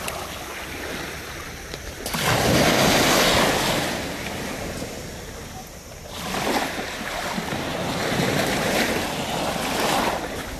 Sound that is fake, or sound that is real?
real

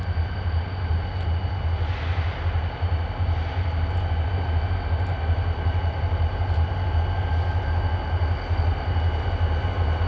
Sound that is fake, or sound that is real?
real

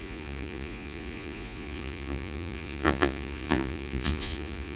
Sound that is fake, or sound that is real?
fake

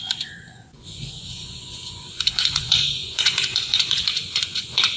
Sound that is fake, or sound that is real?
fake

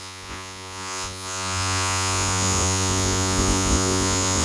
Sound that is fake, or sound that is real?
fake